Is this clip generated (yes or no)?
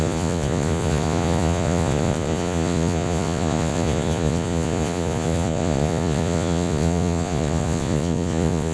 yes